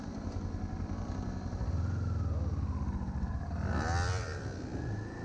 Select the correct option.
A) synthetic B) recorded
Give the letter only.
B